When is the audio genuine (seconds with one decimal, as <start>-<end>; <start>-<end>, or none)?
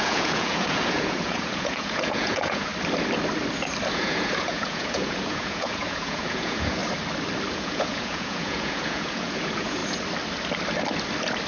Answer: 2.7-3.9; 6.8-7.5; 9.8-11.5